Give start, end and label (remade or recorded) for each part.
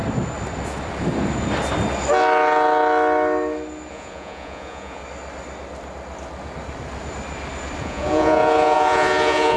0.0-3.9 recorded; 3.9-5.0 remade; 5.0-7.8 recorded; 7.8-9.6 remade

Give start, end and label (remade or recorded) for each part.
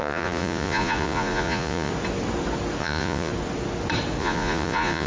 0.0-1.9 remade; 1.9-2.8 recorded; 2.8-3.3 remade; 3.3-4.2 recorded; 4.2-5.1 remade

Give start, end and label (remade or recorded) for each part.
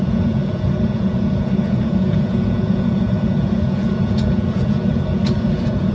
0.0-5.9 remade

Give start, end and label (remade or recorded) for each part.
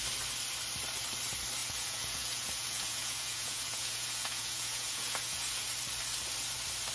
0.0-1.6 recorded; 1.6-5.7 remade; 5.7-6.9 recorded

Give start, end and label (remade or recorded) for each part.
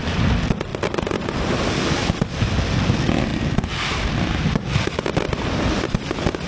0.0-6.5 recorded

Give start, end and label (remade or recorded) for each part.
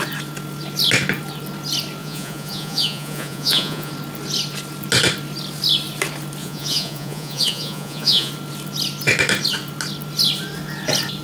0.0-2.0 recorded; 2.0-3.9 remade; 3.9-6.4 recorded; 6.4-8.3 remade; 8.3-11.2 recorded